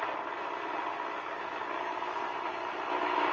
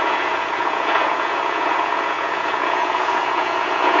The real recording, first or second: first